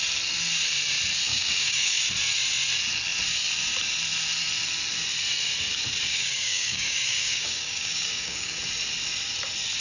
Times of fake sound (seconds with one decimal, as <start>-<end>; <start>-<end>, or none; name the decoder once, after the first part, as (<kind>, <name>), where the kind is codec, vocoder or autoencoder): 1.3-2.0 (codec, DAC); 6.1-8.6